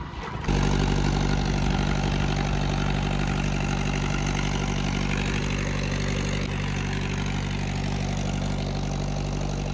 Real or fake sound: real